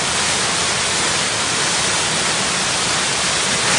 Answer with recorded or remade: recorded